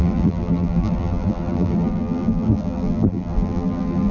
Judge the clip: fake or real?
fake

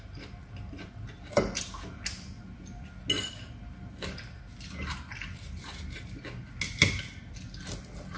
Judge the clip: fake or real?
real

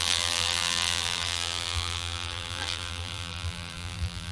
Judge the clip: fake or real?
fake